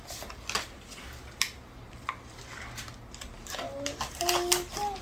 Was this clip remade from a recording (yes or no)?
no